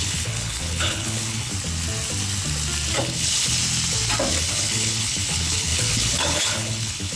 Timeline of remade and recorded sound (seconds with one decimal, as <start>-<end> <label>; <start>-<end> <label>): 0.0-1.5 remade; 1.5-3.0 recorded; 3.0-3.6 remade; 3.6-4.3 recorded; 4.3-7.2 remade